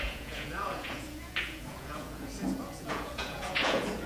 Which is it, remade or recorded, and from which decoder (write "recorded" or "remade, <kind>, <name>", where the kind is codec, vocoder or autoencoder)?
remade, vocoder, Vocos